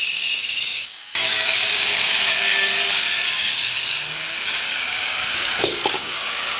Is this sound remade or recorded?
remade